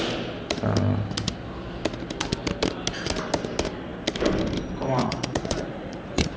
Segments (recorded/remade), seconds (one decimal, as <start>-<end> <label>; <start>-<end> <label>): 0.0-5.0 recorded; 5.0-6.4 remade